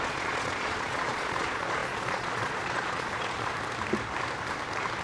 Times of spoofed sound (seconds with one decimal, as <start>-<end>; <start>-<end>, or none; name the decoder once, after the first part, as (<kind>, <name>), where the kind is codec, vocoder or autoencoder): 0.0-3.5 (vocoder, Vocos)